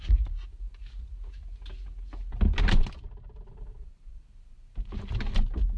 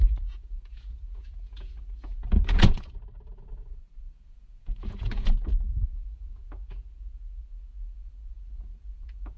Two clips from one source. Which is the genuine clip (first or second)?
first